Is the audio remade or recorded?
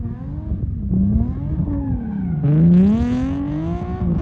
recorded